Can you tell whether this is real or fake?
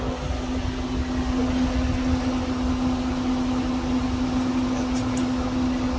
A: real